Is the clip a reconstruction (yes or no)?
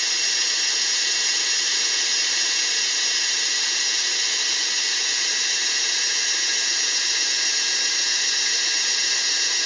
no